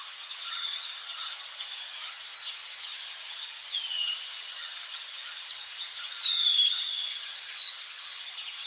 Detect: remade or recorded remade